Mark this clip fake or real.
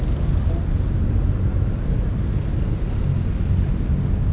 real